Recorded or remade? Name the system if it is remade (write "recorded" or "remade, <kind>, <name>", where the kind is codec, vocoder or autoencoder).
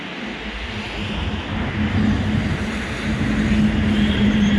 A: recorded